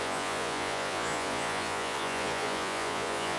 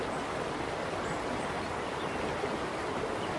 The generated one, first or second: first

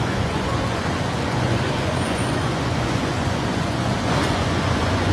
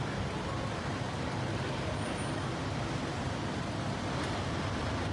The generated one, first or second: first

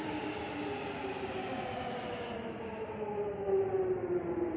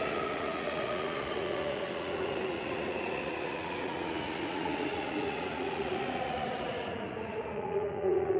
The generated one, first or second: second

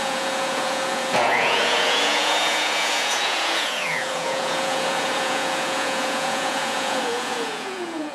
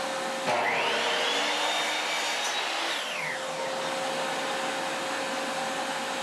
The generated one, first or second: first